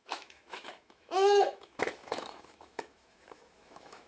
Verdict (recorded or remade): remade